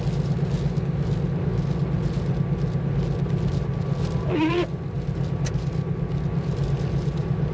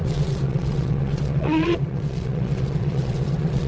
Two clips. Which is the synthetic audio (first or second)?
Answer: second